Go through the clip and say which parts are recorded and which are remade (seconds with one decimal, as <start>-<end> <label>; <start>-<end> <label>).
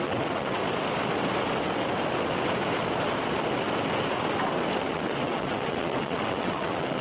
0.0-0.6 remade; 0.6-4.8 recorded; 4.8-7.0 remade